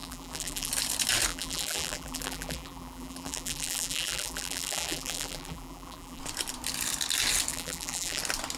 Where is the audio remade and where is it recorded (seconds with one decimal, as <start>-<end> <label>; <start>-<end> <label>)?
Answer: 0.0-0.7 remade; 0.7-1.3 recorded; 1.3-6.2 remade; 6.2-7.5 recorded; 7.5-8.2 remade; 8.2-8.6 recorded